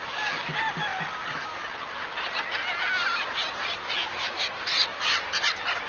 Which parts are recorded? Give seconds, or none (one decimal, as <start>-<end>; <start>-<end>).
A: 0.0-5.9